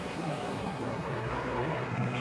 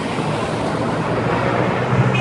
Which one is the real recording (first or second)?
second